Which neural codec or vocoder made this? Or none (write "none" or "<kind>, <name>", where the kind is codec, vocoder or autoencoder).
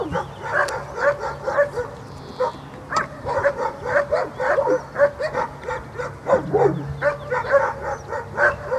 none